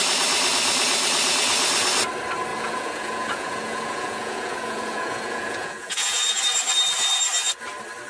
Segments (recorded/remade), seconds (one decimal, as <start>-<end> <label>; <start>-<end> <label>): 0.0-2.5 recorded; 2.5-6.4 remade; 6.4-8.1 recorded